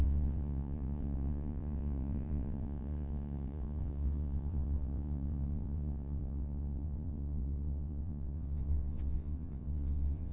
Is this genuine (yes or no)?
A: no